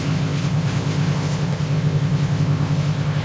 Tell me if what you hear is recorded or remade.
remade